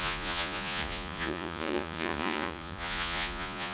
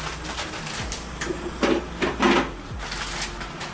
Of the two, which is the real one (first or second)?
second